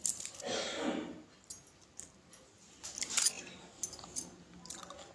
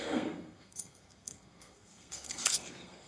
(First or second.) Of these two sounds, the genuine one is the first